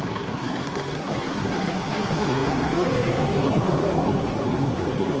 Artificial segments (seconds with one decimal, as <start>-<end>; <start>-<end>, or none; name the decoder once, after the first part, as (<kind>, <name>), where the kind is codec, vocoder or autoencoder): 0.0-5.2 (codec, SNAC)